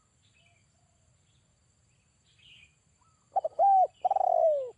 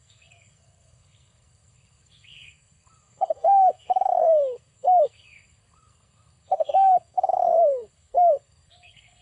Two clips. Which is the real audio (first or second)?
first